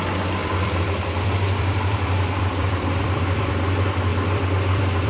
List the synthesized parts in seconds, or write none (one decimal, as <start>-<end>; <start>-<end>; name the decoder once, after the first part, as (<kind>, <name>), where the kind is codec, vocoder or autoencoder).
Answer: 0.4-3.5 (vocoder, BigVGAN v2); 4.1-5.1